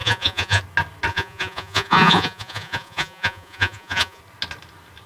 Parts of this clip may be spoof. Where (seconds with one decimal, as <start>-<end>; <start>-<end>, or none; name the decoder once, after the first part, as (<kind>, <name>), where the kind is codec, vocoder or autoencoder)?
0.0-0.6 (vocoder, Vocos); 1.1-4.2